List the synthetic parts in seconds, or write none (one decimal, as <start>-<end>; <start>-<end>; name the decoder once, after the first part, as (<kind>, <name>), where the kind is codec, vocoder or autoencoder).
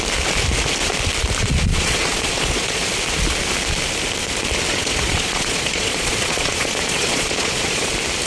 1.4-2.8 (vocoder, Vocos); 4.7-7.9